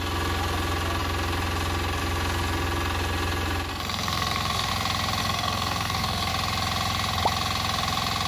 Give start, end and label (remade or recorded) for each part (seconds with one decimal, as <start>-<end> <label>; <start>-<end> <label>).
0.0-3.7 recorded; 3.7-4.7 remade; 4.7-5.2 recorded; 5.2-6.3 remade; 6.3-8.3 recorded